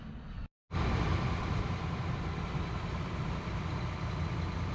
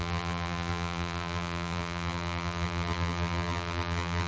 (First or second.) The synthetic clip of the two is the second